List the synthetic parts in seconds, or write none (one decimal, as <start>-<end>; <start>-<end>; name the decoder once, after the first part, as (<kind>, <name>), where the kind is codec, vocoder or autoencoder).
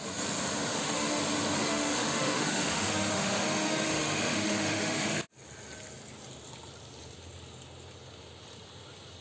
0.7-1.2 (autoencoder, DAC-VAE); 1.6-5.3